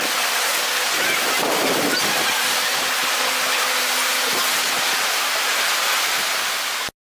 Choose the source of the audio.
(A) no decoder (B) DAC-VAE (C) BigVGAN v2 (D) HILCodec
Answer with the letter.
A